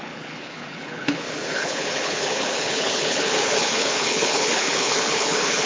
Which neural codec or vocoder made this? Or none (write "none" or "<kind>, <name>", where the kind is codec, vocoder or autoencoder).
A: codec, HILCodec